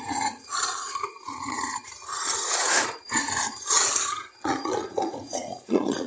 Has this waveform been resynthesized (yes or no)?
yes